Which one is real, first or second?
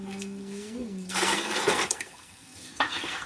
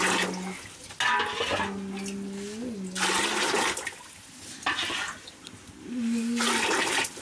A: second